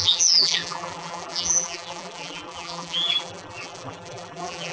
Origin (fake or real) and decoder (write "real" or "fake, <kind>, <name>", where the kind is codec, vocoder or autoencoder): fake, vocoder, BigVGAN v2